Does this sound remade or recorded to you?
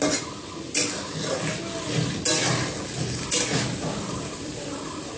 recorded